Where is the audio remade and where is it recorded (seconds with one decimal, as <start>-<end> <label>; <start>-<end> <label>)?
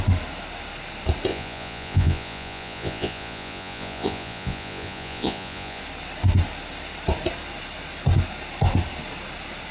0.0-1.3 recorded; 1.3-5.8 remade; 5.8-9.7 recorded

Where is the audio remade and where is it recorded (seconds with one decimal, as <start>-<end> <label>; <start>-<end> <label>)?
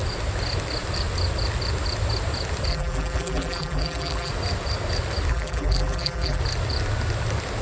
0.0-2.7 recorded; 2.7-4.3 remade; 4.3-5.3 recorded; 5.3-6.4 remade; 6.4-7.6 recorded